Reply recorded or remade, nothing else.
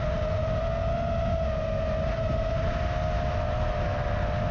recorded